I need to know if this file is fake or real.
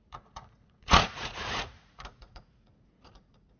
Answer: fake